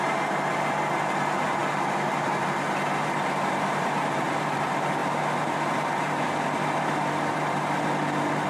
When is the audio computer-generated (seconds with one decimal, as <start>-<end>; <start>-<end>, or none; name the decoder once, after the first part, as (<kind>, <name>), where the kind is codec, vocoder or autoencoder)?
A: none